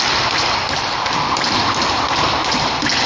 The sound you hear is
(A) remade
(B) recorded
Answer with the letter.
B